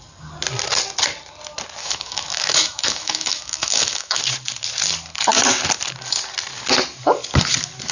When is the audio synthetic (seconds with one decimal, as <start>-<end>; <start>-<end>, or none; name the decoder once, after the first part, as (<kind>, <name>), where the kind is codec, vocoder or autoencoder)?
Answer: 1.8-4.2 (autoencoder, DAC-VAE)